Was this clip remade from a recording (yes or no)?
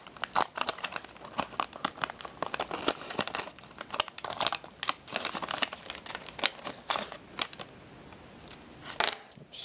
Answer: no